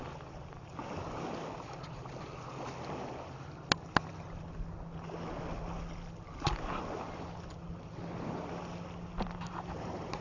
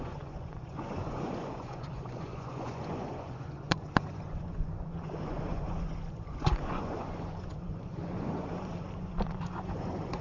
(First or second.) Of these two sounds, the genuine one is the first